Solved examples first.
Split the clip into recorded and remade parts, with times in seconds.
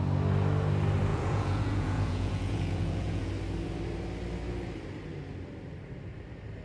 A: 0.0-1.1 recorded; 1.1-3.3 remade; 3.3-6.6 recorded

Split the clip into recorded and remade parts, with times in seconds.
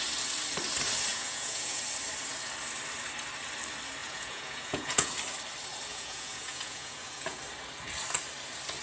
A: 0.0-1.1 recorded; 1.1-1.8 remade; 1.8-4.0 recorded; 4.0-5.1 remade; 5.1-5.9 recorded; 5.9-7.4 remade; 7.4-8.8 recorded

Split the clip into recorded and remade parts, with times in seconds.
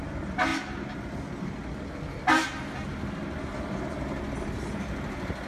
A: 0.0-5.5 recorded